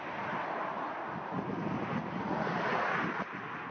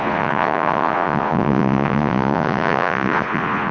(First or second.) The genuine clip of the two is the first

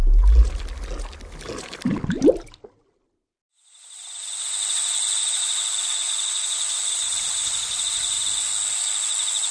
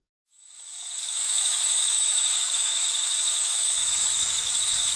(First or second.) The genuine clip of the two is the first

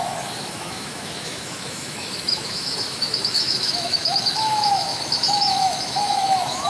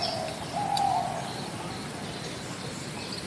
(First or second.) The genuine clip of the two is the second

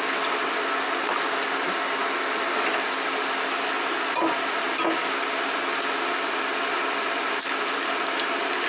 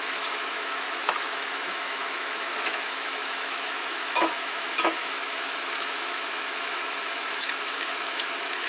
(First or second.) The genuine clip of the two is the first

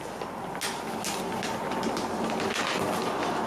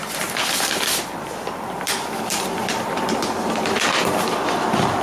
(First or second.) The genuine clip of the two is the first